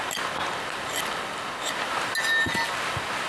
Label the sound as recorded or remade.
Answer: recorded